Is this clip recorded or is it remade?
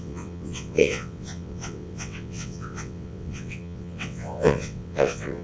remade